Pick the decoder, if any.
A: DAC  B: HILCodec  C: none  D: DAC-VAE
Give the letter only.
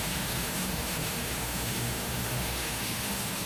D